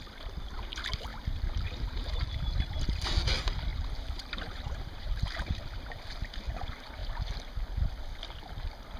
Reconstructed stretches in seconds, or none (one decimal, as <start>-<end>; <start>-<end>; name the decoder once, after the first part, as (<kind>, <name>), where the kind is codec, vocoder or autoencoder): 3.7-5.6 (vocoder, BigVGAN v2)

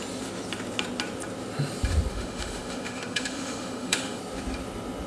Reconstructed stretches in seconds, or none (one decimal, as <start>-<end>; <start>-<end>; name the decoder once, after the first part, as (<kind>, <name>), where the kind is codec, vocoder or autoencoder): 2.1-4.2 (autoencoder, DAC-VAE)